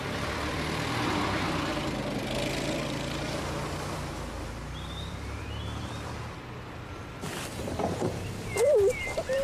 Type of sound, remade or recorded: remade